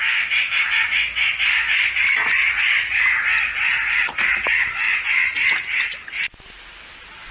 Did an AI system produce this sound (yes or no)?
no